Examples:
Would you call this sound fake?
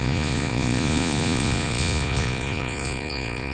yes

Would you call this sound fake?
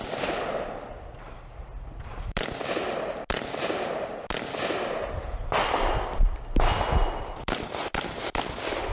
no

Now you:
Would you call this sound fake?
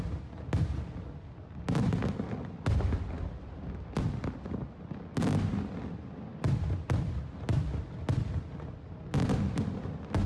no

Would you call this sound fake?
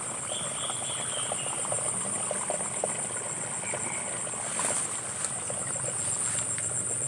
no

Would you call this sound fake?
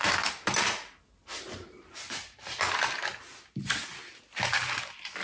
no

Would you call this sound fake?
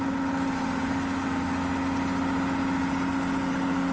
no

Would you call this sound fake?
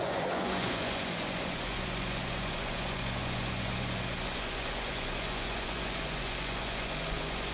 yes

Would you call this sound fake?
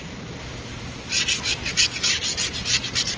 no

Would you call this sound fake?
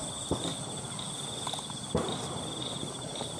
no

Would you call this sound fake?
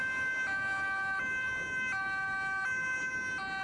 no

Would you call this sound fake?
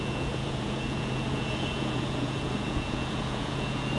yes